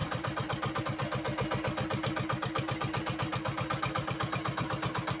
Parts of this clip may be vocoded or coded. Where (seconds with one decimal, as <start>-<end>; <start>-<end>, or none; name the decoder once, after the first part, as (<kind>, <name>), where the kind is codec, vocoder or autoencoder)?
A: 0.0-0.8 (vocoder, BigVGAN v2)